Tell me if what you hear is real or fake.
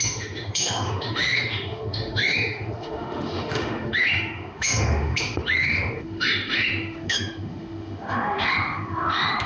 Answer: fake